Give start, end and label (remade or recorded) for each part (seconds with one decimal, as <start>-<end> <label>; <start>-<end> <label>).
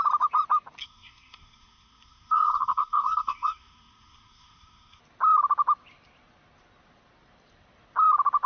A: 0.0-0.8 recorded; 0.8-5.0 remade; 5.0-8.5 recorded